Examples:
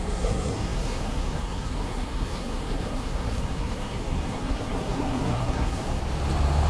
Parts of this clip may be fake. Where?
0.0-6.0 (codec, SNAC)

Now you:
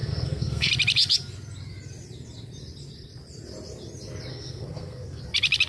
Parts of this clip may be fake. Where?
0.0-0.7 (codec, SNAC); 4.3-5.2

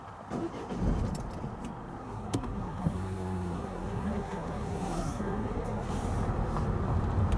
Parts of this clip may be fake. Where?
2.0-5.9 (codec, SNAC)

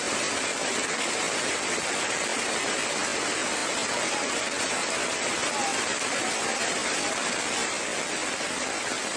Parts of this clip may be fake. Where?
none

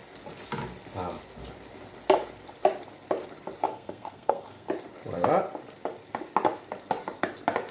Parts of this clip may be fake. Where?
3.7-4.7 (codec, SNAC)

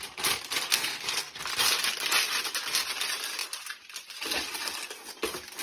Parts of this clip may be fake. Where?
0.7-1.4 (codec, SNAC)

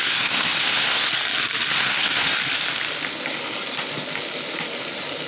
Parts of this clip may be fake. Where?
0.0-1.1 (codec, SNAC); 1.7-2.4